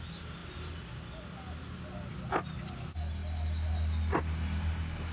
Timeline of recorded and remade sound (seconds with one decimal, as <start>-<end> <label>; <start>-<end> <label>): 0.0-5.1 recorded